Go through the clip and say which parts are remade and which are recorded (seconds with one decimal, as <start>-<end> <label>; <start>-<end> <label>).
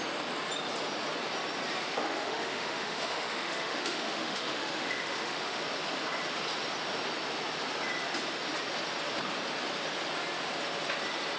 0.0-1.8 recorded; 1.8-5.6 remade; 5.6-11.4 recorded